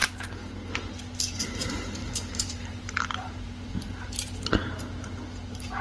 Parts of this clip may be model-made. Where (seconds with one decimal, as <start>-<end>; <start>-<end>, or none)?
2.0-4.6